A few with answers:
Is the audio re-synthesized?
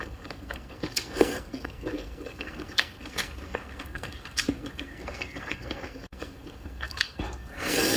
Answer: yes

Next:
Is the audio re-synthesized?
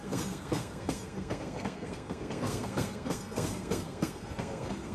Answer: yes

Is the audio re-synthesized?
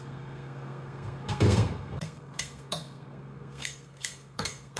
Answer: yes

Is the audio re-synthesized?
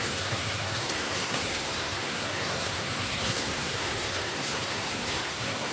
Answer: yes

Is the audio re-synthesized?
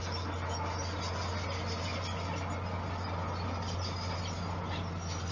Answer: no